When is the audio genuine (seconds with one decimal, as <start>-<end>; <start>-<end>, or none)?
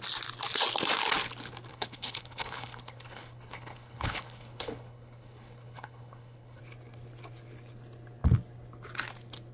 0.0-1.7; 6.6-9.5